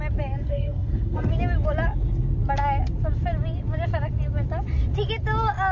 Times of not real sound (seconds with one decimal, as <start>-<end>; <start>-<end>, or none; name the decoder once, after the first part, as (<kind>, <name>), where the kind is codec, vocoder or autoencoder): 0.4-1.3 (codec, SNAC)